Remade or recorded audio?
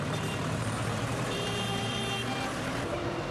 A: remade